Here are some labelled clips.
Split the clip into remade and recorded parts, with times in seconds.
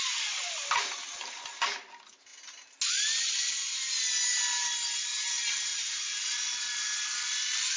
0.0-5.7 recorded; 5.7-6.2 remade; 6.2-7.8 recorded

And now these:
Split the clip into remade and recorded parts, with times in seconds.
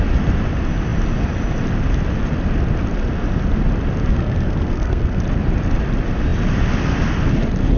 0.0-4.1 recorded; 4.1-5.2 remade; 5.2-7.8 recorded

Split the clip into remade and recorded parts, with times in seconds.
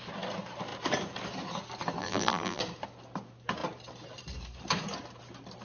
0.0-2.0 recorded; 2.0-2.6 remade; 2.6-5.6 recorded